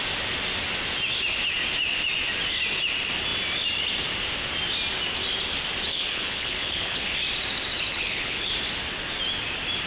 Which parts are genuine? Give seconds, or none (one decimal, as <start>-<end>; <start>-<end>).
0.0-5.9; 7.0-7.9; 8.5-9.9